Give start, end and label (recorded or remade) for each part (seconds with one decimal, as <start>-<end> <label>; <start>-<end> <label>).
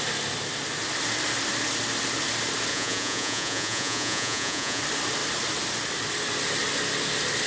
0.0-2.7 recorded; 2.7-4.8 remade; 4.8-7.5 recorded